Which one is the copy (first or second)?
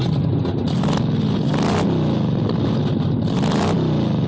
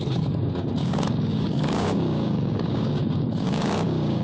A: second